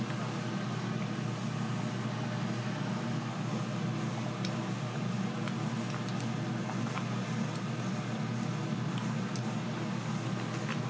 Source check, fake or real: real